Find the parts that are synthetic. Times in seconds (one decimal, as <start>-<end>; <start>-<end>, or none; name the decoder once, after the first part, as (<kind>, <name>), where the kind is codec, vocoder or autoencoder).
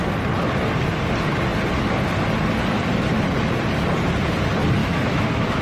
4.8-5.6 (autoencoder, DAC-VAE)